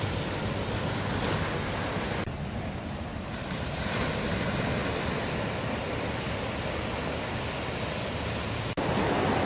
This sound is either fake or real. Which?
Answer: real